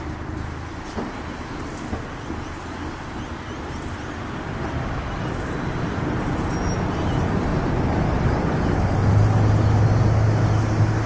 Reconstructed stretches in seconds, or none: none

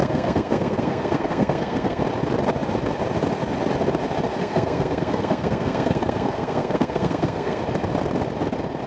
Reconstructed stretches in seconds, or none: 0.0-2.0; 4.4-7.6

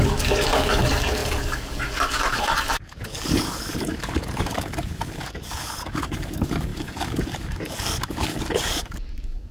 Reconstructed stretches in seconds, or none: 0.0-9.5

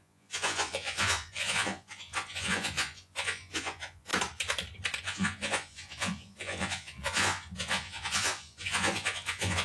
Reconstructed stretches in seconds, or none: 0.0-4.1; 5.0-9.6

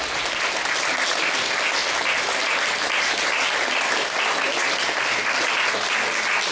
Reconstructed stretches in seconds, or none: none

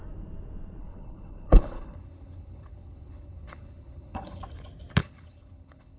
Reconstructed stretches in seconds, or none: 0.8-4.4; 5.0-6.0